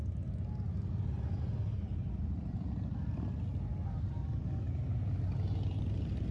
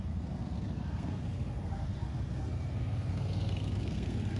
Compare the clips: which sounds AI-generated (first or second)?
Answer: second